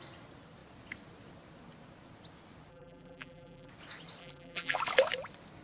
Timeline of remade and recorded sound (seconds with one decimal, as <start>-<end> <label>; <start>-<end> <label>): 0.0-2.7 recorded; 2.7-3.7 remade; 3.7-4.2 recorded; 4.2-4.8 remade; 4.8-5.6 recorded